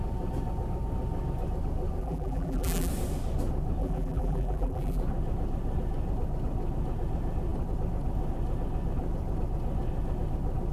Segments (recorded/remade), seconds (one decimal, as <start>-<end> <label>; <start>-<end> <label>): 0.0-2.0 recorded; 2.0-2.9 remade; 2.9-3.8 recorded; 3.8-5.0 remade; 5.0-10.7 recorded